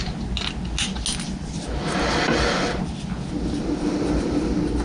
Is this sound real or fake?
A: real